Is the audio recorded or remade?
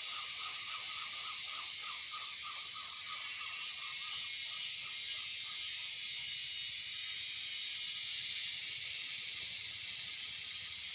remade